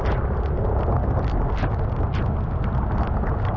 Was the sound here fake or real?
real